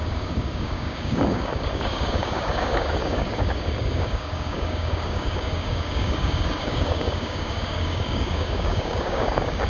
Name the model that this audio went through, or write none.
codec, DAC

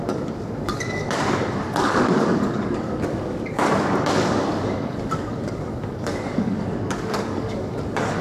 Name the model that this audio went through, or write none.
codec, DAC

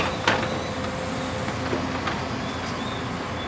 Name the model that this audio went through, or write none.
none